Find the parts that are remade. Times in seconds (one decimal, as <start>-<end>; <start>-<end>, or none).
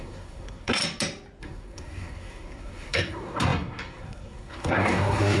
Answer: 0.0-0.8; 1.4-5.4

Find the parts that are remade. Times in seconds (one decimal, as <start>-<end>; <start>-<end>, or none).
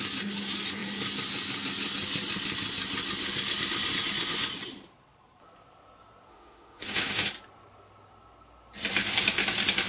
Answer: 6.3-7.3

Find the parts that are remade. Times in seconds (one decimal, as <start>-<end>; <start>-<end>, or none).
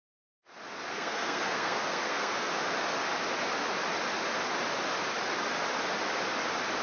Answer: 0.9-2.5